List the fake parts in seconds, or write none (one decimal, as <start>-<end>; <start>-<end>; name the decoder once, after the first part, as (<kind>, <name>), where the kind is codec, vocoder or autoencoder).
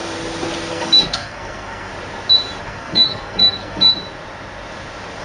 0.7-1.9 (codec, SNAC); 2.6-3.9